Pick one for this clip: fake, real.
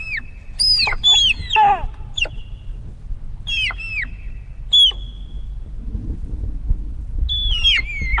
real